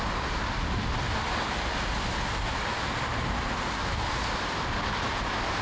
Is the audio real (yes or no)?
yes